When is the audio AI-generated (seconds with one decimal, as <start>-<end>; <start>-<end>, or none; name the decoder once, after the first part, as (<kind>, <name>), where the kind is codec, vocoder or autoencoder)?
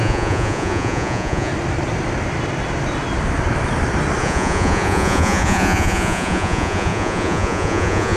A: 0.0-1.5 (vocoder, Vocos); 4.2-8.2